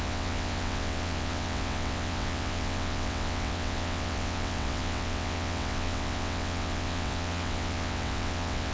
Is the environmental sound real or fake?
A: fake